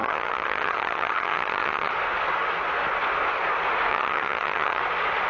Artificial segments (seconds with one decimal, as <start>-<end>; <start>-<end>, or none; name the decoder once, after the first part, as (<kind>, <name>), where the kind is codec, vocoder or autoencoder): 0.0-1.9 (vocoder, HiFi-GAN); 3.9-4.8